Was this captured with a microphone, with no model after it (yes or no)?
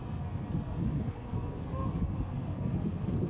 no